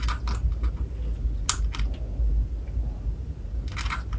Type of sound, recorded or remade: recorded